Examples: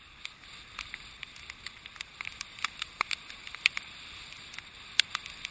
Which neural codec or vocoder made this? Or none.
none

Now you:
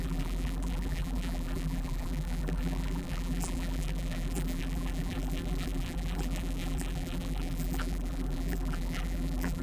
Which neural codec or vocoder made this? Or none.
vocoder, BigVGAN v2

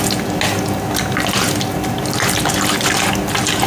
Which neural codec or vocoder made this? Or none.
none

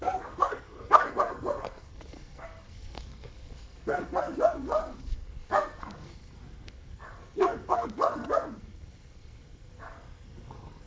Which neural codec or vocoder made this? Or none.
codec, SNAC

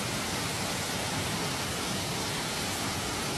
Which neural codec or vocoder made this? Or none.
none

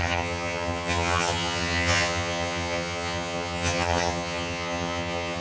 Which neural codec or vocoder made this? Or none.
vocoder, HiFi-GAN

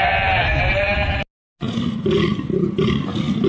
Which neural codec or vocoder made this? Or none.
none